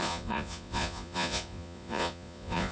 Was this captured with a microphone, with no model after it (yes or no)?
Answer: no